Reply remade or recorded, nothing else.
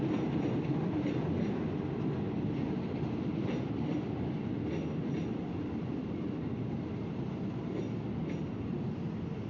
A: recorded